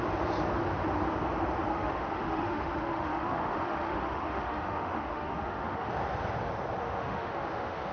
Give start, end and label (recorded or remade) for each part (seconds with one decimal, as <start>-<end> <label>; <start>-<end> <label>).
0.0-1.7 recorded; 1.7-5.9 remade; 5.9-6.8 recorded; 6.8-7.9 remade